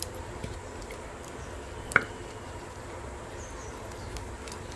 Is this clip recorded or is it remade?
remade